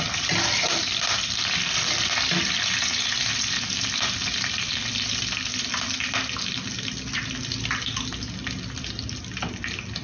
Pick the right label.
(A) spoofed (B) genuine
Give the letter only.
B